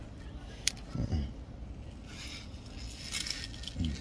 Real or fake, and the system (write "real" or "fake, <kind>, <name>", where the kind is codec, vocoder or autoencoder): real